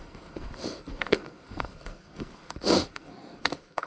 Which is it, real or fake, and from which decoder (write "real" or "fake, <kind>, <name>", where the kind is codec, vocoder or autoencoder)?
fake, codec, SNAC